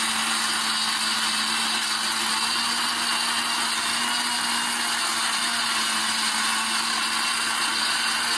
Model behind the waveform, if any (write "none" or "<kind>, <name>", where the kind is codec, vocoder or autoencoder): none